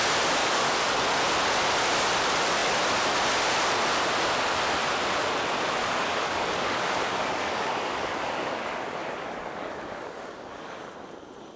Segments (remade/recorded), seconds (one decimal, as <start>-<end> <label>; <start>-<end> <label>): 0.0-0.4 recorded; 0.4-1.0 remade; 1.0-5.8 recorded; 5.8-10.8 remade; 10.8-11.6 recorded